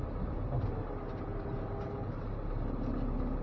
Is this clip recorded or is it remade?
recorded